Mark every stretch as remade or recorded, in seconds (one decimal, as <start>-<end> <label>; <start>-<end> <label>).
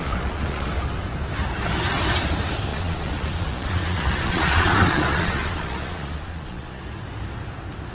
0.0-0.7 remade; 0.7-2.7 recorded; 2.7-6.8 remade; 6.8-7.9 recorded